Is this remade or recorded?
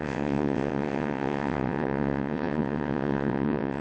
remade